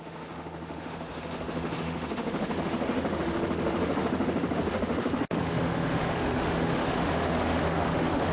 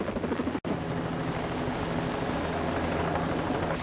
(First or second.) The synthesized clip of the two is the first